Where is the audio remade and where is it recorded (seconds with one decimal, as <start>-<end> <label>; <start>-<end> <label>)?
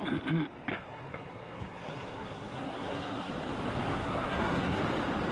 0.0-0.7 recorded; 0.7-3.3 remade; 3.3-3.9 recorded; 3.9-4.8 remade; 4.8-5.3 recorded